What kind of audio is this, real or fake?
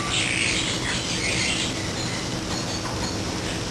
real